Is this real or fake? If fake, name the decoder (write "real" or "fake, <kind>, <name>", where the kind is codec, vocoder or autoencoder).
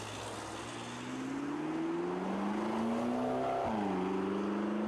real